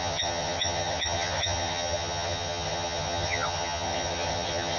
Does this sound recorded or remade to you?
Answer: remade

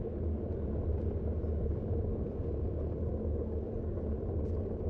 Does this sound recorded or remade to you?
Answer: recorded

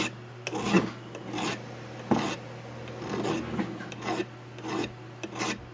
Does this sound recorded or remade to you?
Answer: recorded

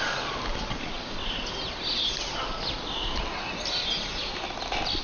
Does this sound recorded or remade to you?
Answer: recorded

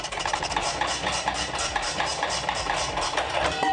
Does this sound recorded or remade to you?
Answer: remade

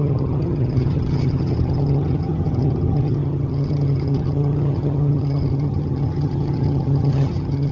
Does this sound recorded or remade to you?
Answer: remade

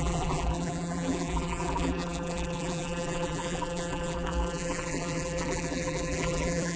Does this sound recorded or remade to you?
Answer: remade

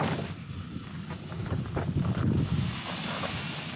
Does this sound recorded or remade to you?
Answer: recorded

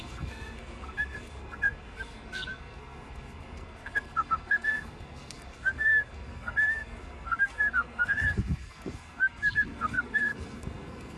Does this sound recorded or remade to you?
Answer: remade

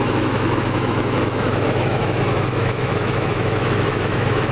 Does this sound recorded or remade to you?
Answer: remade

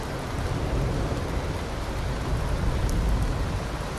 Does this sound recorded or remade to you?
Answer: recorded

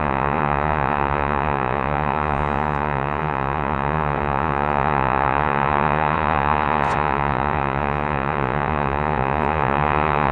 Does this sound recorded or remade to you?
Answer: remade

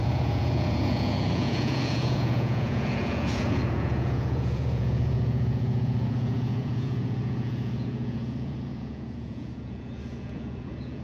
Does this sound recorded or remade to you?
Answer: remade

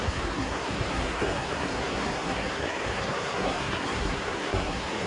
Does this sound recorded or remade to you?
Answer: remade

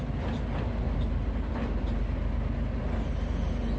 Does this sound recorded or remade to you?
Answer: recorded